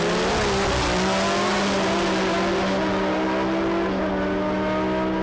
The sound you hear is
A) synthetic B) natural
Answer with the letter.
B